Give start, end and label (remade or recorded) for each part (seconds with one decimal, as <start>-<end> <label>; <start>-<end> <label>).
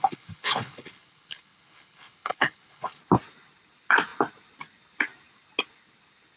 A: 0.0-3.0 remade; 3.0-6.4 recorded